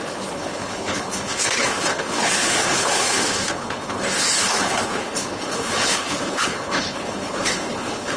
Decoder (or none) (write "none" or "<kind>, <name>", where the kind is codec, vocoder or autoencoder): codec, HILCodec